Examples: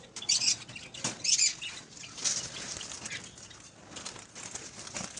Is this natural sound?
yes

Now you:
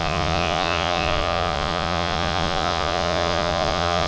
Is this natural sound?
no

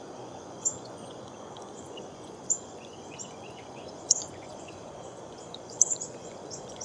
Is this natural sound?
no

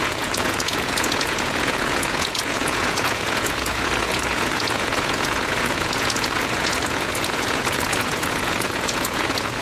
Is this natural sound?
no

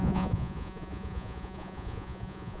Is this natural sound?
no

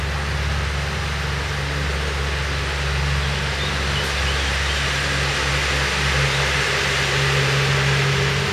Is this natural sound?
yes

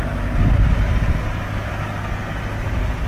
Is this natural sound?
yes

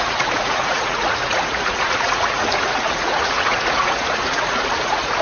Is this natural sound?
no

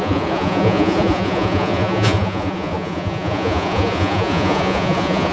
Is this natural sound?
no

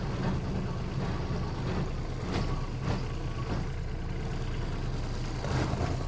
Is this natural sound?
yes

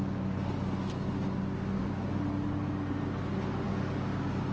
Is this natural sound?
yes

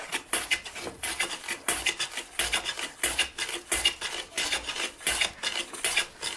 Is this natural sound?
yes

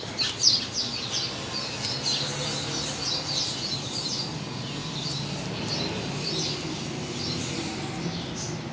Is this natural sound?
yes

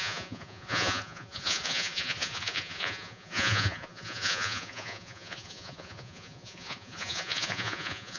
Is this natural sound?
no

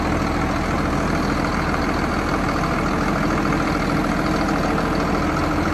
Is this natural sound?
yes